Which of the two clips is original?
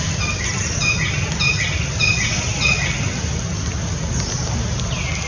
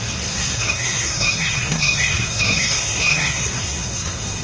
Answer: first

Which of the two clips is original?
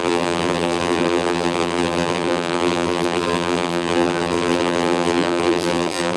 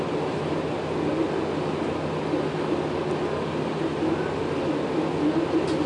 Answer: second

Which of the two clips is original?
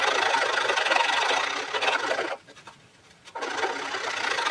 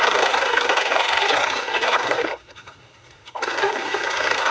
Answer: first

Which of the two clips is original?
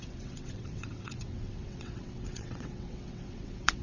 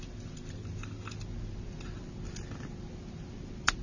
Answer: second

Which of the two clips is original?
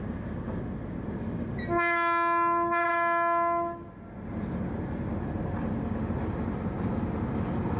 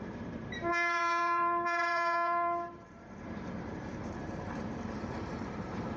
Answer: first